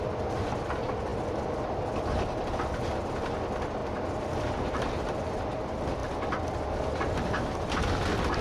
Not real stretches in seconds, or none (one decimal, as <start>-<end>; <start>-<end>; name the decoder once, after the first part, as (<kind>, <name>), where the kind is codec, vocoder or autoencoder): none